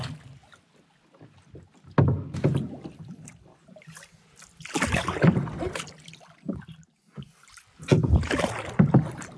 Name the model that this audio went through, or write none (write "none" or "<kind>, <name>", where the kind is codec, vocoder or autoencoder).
none